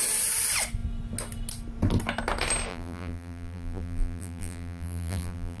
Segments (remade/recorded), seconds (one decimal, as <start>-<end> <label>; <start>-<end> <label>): 0.0-2.7 recorded; 2.7-5.6 remade